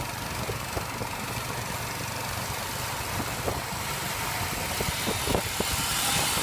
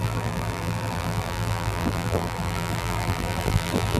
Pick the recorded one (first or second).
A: first